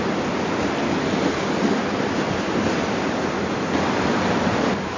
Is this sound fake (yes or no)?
no